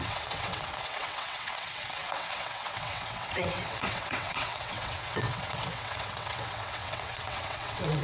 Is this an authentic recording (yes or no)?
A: no